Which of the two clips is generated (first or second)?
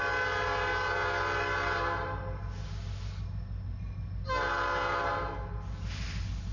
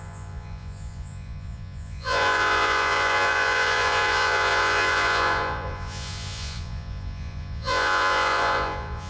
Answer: second